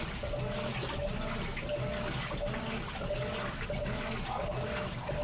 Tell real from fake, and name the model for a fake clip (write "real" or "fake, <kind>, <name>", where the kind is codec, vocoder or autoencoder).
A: real